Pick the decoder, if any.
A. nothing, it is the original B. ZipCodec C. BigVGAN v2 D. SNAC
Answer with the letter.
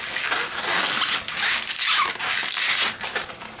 C